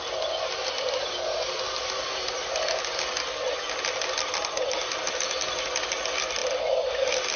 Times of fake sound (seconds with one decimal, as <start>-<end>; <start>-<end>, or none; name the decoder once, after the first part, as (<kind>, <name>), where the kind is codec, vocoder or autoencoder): none